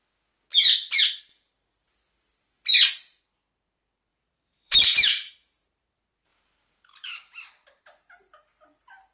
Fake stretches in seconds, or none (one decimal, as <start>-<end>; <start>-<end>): 4.1-7.1